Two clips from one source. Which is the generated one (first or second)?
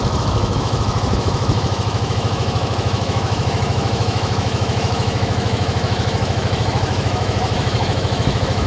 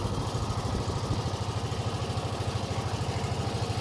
first